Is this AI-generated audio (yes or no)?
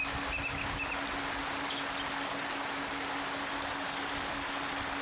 no